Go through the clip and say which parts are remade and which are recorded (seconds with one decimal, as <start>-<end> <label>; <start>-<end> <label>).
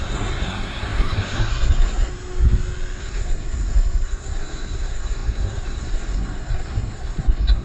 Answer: 0.0-2.1 remade; 2.1-3.0 recorded; 3.0-7.6 remade